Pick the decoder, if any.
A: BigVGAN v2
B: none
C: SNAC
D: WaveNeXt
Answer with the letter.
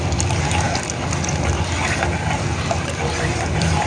B